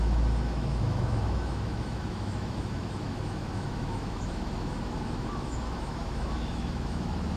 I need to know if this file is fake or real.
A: fake